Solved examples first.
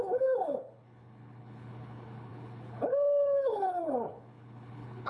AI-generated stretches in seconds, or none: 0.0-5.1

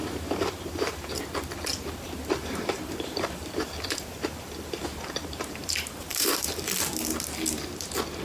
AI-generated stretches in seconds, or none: 0.0-1.2; 1.7-6.6

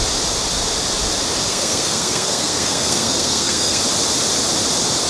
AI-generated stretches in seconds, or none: 1.5-3.8